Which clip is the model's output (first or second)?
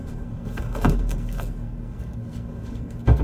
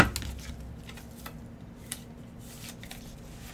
first